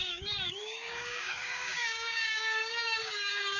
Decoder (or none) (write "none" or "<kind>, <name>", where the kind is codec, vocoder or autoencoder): codec, DAC